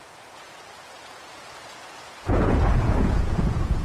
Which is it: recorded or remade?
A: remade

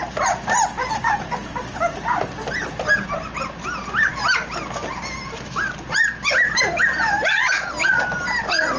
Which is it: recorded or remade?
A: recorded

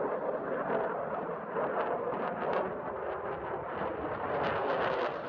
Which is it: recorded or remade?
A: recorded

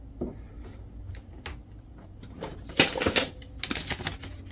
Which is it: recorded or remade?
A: recorded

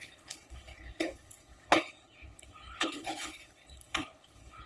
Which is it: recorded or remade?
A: remade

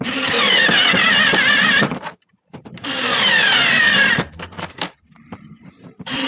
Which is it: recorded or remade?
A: remade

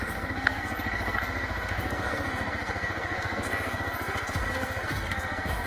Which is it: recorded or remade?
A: remade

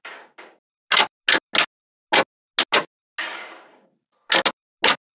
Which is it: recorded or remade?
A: recorded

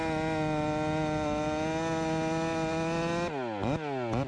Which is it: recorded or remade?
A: recorded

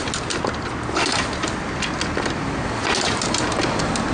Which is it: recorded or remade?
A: recorded